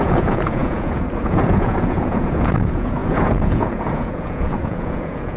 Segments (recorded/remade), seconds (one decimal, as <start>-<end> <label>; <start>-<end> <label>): 0.0-5.4 remade